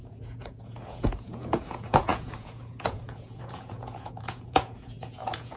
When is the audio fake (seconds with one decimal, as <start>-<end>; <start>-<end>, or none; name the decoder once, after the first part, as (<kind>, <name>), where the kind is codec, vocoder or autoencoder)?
0.0-5.6 (vocoder, Vocos)